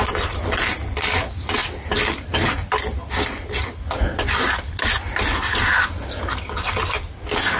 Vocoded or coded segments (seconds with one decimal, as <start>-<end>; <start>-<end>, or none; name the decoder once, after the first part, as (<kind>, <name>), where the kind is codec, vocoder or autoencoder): none